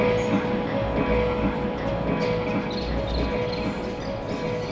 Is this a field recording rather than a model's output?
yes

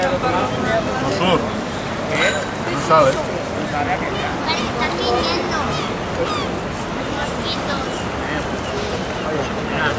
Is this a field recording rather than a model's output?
yes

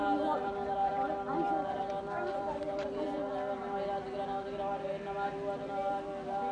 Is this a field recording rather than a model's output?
yes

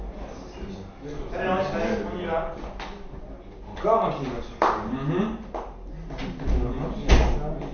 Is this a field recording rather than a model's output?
yes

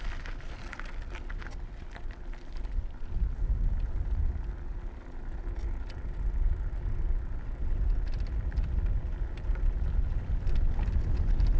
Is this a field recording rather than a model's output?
yes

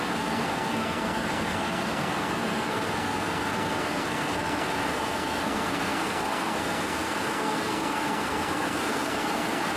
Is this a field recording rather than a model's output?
no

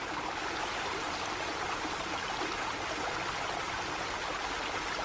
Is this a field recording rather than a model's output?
yes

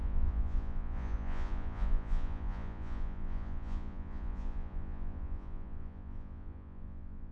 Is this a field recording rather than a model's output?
no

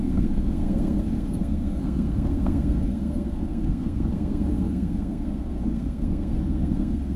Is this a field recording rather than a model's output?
no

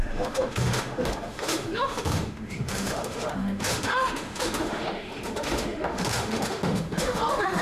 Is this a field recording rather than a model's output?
no